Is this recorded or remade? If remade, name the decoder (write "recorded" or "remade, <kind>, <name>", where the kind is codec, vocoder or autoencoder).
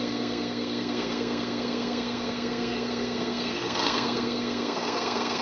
remade, codec, SNAC